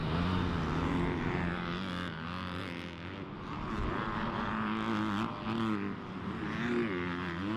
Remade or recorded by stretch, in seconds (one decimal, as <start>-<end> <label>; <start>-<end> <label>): 0.0-7.6 recorded